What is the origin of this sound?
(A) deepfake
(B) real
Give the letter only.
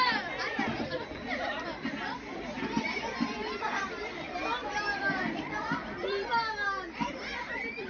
A